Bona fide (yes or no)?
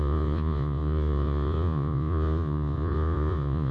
no